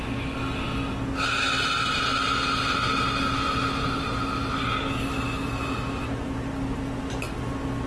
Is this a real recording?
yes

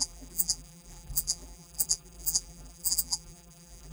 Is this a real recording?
no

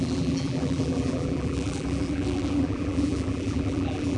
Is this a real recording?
no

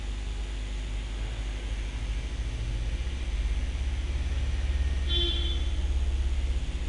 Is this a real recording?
yes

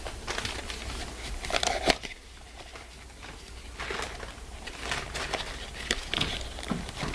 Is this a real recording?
yes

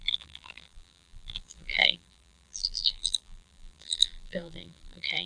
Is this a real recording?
no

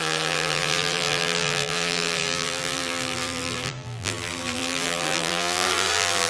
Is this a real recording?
no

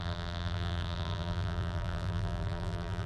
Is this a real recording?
no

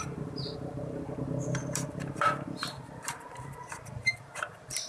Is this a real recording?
no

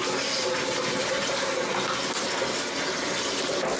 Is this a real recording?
yes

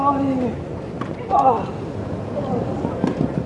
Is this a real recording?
yes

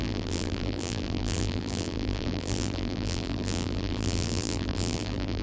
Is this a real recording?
no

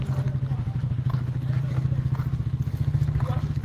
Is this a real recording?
yes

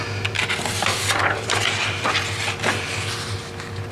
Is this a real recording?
yes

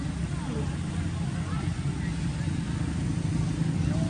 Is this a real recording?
yes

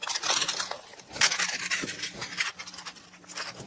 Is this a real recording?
no